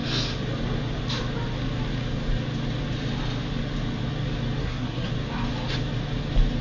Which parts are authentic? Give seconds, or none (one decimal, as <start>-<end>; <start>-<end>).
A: 0.0-4.6; 5.1-6.6